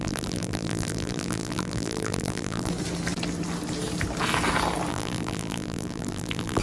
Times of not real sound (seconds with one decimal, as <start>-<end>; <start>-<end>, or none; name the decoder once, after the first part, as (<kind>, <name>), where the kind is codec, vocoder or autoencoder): 0.0-2.7 (vocoder, BigVGAN v2); 4.9-6.6